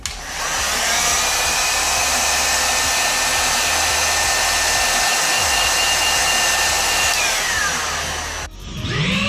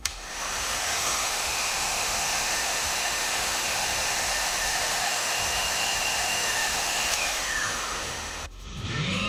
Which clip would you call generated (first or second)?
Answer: second